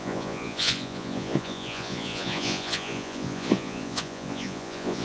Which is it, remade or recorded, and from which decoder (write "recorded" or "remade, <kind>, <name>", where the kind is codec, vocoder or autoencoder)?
remade, vocoder, Vocos